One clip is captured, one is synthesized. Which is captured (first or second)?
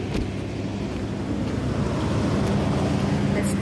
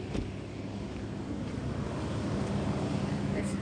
first